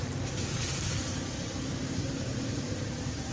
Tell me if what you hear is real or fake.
fake